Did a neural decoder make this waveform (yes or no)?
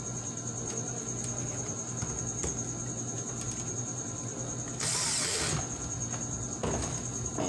no